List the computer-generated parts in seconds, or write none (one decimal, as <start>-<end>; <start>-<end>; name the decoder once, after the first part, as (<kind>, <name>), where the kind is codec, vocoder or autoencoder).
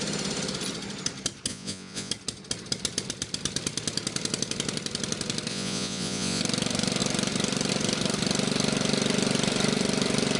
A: 1.5-2.1 (vocoder, Vocos); 5.5-6.4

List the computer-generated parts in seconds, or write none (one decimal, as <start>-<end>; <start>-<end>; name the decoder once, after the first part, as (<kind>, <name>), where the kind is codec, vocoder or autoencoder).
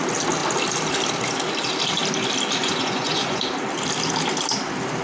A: 2.6-3.4 (vocoder, Vocos)